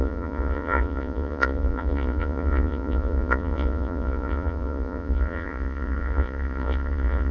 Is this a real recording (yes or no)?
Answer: no